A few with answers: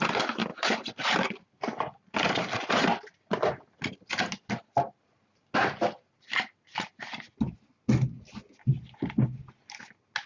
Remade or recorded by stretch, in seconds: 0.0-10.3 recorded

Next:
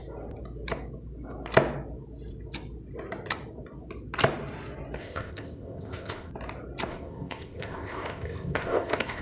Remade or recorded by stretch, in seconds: 0.0-5.0 recorded; 5.0-6.3 remade; 6.3-6.9 recorded; 6.9-9.2 remade

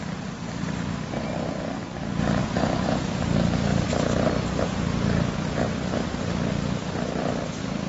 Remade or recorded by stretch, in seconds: 0.0-2.4 recorded; 2.4-3.2 remade; 3.2-7.9 recorded